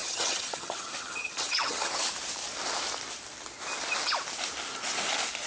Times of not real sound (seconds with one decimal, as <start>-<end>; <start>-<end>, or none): 0.0-2.1